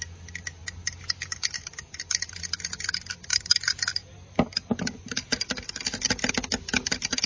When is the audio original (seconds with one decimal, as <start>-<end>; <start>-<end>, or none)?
0.0-7.3